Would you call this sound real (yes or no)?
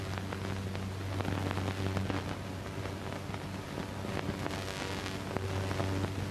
yes